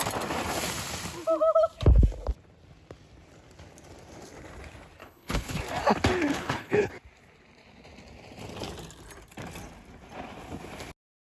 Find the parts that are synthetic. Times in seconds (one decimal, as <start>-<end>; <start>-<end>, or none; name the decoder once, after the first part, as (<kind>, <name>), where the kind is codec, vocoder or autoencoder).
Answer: 5.0-5.6 (codec, HILCodec); 6.3-6.9

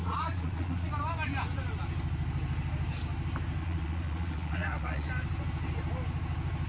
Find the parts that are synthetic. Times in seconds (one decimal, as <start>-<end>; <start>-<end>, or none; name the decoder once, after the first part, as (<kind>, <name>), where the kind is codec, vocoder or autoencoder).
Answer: 0.0-0.9 (vocoder, Vocos); 3.6-5.1